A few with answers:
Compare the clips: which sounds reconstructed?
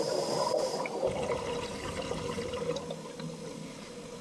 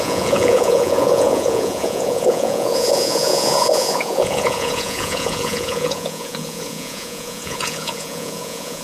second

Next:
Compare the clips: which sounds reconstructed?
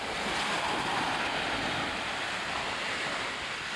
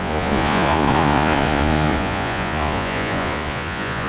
second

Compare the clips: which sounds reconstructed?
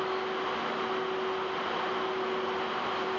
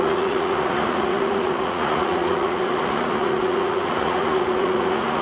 second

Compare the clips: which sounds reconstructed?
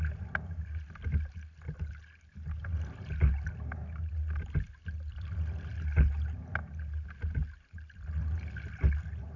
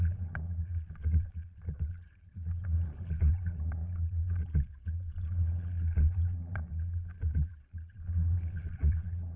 second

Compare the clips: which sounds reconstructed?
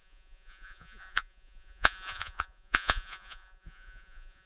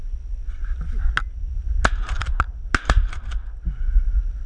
first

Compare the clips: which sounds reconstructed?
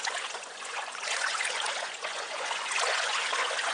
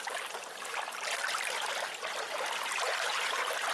first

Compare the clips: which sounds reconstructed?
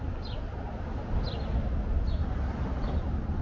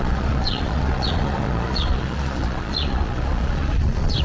second